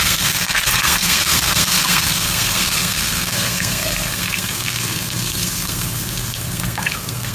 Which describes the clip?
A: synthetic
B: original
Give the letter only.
A